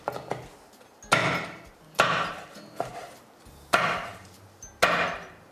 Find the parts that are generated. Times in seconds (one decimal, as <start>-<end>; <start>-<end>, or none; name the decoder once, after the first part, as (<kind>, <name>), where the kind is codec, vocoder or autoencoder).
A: 1.2-4.5 (vocoder, BigVGAN v2)